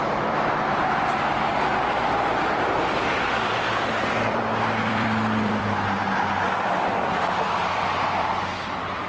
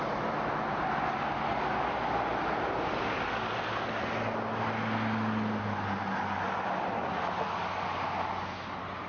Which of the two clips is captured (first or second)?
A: second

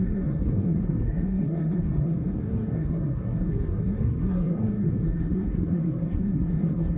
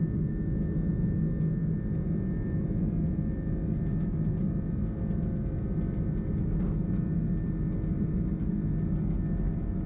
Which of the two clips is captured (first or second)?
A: second